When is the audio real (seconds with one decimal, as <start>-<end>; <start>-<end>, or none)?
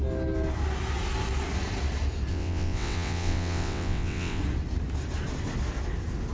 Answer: 0.0-2.3; 4.4-6.3